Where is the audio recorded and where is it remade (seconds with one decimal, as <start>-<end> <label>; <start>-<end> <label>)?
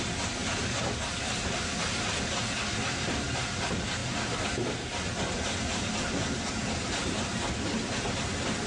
0.0-8.7 recorded